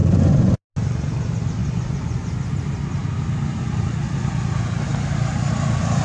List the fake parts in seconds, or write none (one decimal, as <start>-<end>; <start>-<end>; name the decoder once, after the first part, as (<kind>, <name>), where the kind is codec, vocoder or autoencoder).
0.0-0.6 (vocoder, Vocos); 1.6-2.5